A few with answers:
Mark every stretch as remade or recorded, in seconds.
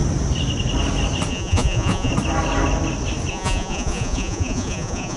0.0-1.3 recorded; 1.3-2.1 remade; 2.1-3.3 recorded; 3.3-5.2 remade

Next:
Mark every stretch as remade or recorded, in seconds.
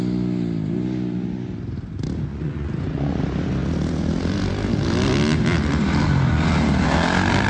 0.0-2.3 recorded; 2.3-3.2 remade; 3.2-7.5 recorded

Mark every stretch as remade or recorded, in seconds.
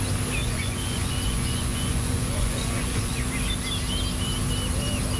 0.0-0.4 recorded; 0.4-3.5 remade; 3.5-5.2 recorded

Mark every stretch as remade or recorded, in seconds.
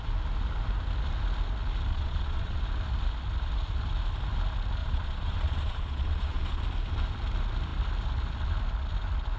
0.0-1.9 recorded; 1.9-2.6 remade; 2.6-4.8 recorded; 4.8-6.6 remade; 6.6-9.4 recorded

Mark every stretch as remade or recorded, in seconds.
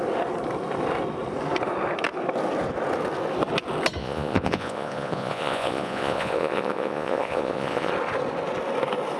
0.0-4.0 recorded; 4.0-7.9 remade; 7.9-9.2 recorded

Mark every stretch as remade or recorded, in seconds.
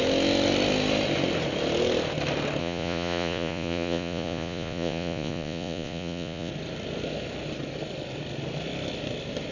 0.0-2.6 recorded; 2.6-6.5 remade; 6.5-9.5 recorded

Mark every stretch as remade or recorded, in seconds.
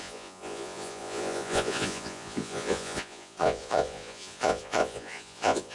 0.0-5.7 remade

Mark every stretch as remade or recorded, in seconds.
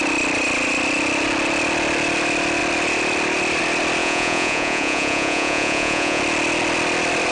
0.0-4.0 recorded; 4.0-6.2 remade; 6.2-7.3 recorded